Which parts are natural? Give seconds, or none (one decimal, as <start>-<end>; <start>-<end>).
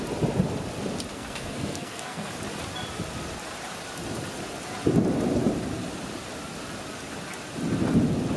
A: 0.0-1.1; 2.3-8.4